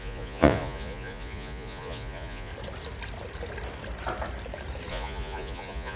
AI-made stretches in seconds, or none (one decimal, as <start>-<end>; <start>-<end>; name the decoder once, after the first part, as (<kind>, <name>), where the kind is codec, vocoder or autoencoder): 0.0-2.5 (vocoder, Vocos); 4.9-6.0